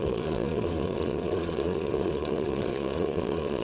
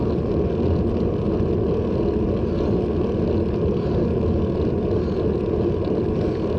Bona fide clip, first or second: second